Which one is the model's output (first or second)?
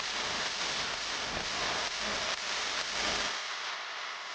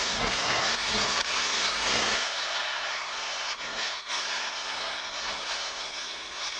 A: second